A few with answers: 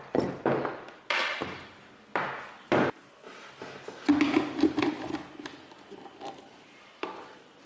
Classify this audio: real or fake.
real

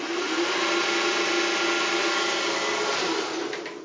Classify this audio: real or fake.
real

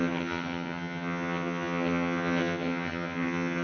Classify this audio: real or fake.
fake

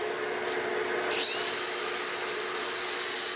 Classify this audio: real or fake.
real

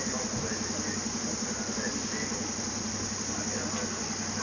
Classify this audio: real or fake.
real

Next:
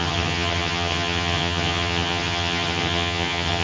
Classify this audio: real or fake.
fake